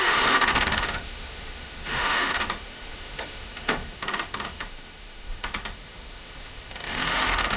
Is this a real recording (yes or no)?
no